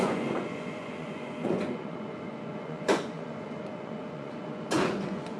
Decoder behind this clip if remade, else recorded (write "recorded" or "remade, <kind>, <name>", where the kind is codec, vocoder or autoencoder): remade, vocoder, Vocos